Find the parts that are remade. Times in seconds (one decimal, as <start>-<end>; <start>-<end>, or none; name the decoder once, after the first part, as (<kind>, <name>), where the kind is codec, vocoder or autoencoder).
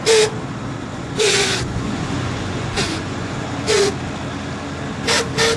0.9-3.9 (vocoder, Vocos)